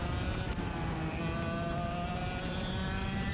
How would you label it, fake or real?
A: real